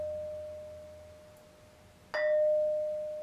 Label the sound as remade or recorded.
recorded